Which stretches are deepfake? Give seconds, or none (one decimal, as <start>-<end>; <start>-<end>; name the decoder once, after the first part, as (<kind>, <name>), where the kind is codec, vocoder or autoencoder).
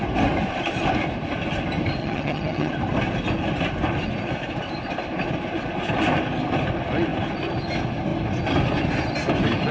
2.0-2.7 (vocoder, HiFi-GAN)